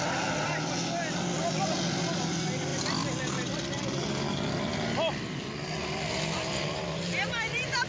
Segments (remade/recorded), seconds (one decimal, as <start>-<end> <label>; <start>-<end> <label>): 0.0-7.9 recorded